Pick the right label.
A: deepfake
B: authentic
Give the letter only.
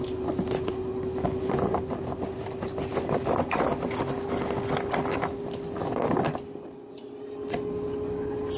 B